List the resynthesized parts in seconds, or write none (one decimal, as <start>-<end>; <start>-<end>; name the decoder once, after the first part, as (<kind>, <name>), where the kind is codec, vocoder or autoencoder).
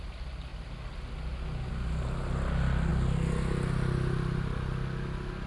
none